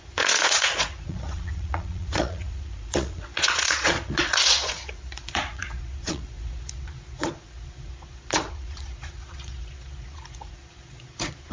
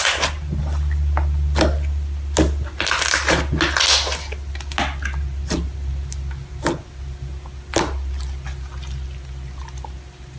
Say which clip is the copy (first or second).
first